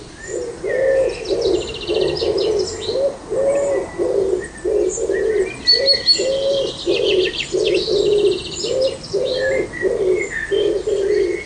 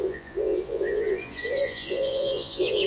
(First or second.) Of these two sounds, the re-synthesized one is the second